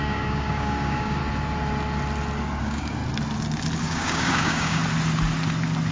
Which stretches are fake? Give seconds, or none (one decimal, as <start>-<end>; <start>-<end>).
0.0-1.2; 2.6-3.0; 3.8-4.8